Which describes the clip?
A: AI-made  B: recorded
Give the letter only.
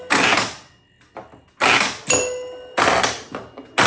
B